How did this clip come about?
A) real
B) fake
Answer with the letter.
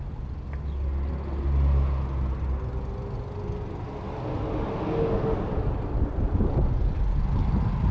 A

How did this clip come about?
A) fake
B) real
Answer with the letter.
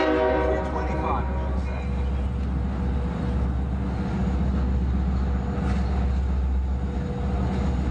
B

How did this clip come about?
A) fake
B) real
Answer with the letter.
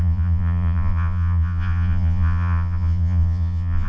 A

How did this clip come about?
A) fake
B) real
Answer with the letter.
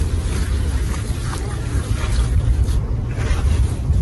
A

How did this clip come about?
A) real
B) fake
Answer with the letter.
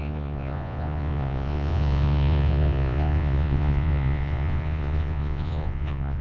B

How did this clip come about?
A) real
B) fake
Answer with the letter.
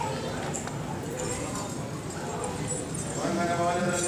A